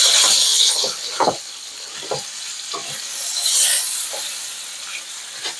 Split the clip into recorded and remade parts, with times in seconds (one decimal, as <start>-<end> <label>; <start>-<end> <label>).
0.0-0.5 recorded; 0.5-1.9 remade; 1.9-5.6 recorded